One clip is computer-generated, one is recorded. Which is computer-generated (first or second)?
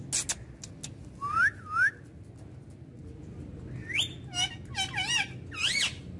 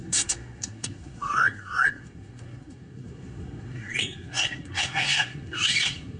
second